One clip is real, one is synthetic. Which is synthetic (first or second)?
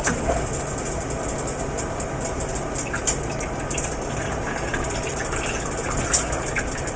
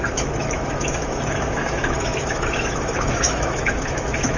second